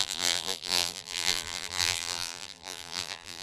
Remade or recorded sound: remade